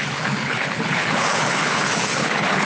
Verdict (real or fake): fake